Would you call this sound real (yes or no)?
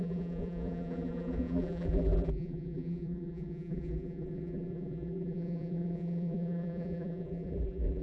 no